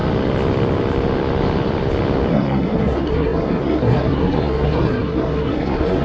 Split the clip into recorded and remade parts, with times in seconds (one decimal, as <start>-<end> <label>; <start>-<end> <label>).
0.0-2.3 recorded; 2.3-6.0 remade